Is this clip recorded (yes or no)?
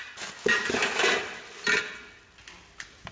yes